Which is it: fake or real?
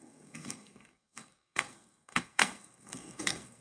fake